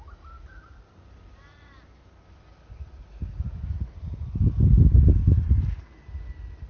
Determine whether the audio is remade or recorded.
recorded